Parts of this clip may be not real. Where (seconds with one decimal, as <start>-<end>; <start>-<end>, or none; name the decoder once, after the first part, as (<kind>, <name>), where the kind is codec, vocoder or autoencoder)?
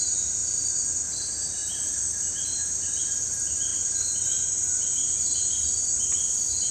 3.7-5.2 (vocoder, BigVGAN v2)